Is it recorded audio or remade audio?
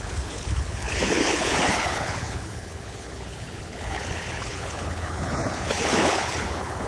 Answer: remade